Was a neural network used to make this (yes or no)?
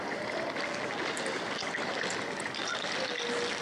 no